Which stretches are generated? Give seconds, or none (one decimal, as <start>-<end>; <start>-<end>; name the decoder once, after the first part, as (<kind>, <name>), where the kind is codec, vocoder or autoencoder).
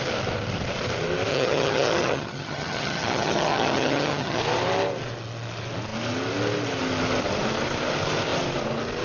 1.3-4.4 (vocoder, HiFi-GAN)